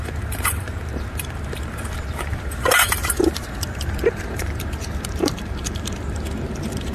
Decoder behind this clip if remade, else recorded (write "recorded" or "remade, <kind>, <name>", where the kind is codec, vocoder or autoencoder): remade, vocoder, BigVGAN v2